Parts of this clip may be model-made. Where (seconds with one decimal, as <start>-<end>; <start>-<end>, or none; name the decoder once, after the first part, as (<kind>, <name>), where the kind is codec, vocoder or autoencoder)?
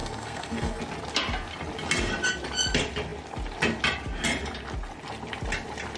0.0-0.8 (codec, SNAC)